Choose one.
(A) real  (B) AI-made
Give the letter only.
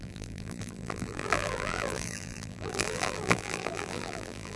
B